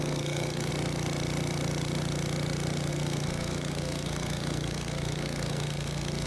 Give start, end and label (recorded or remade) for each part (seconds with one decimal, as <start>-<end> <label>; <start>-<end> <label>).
0.0-0.7 remade; 0.7-2.9 recorded; 2.9-6.3 remade